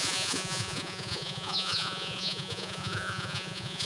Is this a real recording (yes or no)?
no